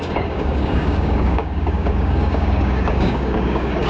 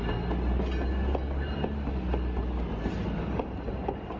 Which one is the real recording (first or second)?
second